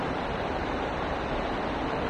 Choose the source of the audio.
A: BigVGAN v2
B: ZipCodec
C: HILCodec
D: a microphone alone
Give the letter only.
A